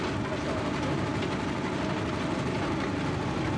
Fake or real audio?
real